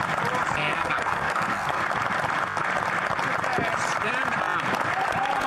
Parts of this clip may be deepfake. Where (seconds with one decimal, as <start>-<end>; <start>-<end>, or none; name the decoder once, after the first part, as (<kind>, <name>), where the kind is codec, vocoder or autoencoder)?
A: 0.6-1.8 (codec, SNAC)